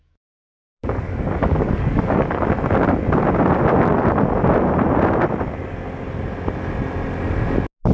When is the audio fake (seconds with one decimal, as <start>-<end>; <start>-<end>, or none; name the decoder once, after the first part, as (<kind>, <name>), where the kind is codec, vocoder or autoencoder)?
0.0-2.4 (codec, DAC)